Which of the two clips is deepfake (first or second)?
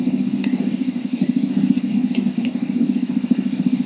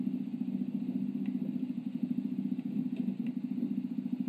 first